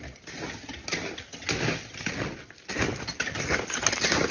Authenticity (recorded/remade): recorded